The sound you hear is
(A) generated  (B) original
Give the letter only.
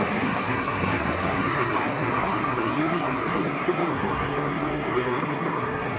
A